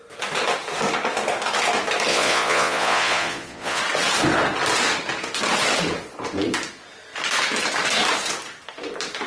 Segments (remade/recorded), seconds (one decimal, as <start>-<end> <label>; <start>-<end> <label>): 0.0-2.1 recorded; 2.1-3.8 remade; 3.8-9.3 recorded